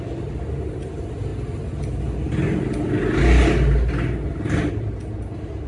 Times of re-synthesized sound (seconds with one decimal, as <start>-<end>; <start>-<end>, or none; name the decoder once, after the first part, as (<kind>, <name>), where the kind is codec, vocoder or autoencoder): none